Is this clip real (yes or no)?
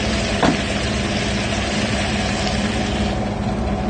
yes